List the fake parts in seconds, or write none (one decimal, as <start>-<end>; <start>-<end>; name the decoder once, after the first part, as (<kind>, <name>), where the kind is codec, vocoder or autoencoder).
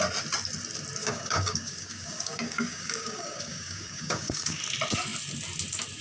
1.0-4.6 (codec, DAC)